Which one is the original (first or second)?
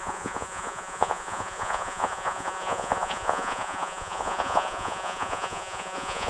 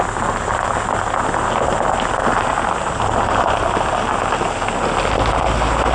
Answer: second